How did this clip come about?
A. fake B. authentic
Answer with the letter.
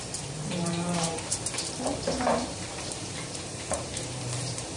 A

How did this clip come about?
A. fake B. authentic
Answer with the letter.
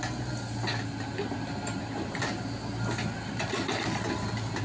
B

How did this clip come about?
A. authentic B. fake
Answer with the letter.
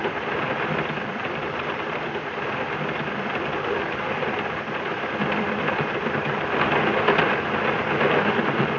B